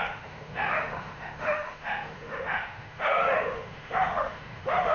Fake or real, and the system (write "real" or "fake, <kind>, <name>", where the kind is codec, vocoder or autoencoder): fake, autoencoder, DAC-VAE